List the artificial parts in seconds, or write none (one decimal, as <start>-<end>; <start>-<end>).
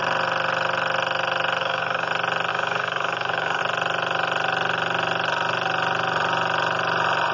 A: 1.6-2.1; 2.5-3.6